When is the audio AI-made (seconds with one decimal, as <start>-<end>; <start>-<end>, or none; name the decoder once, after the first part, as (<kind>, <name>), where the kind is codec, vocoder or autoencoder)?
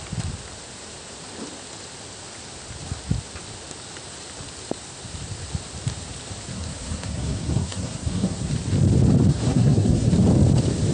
6.5-8.5 (codec, SNAC); 9.3-10.1